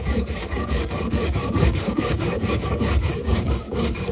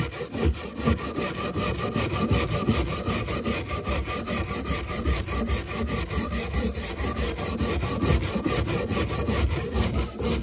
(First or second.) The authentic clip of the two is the second